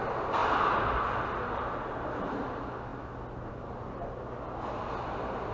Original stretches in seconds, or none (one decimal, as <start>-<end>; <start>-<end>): 0.0-5.5